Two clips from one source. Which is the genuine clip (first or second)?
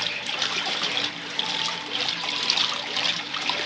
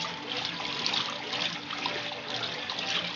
second